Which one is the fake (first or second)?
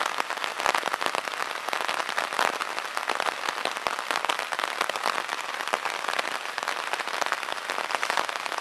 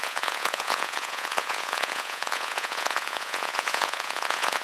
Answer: second